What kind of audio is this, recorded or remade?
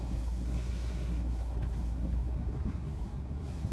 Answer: remade